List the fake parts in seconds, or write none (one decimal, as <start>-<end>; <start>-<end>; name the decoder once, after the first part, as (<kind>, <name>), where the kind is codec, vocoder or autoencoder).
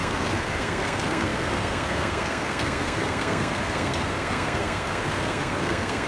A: 0.0-6.1 (codec, SNAC)